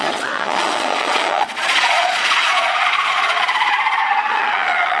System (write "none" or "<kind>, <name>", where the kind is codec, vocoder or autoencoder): vocoder, Vocos